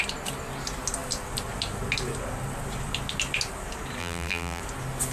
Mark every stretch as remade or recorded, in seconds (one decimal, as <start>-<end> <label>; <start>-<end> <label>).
0.0-4.0 recorded; 4.0-4.6 remade; 4.6-5.1 recorded